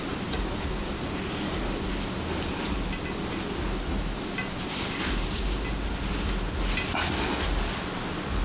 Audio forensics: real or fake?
real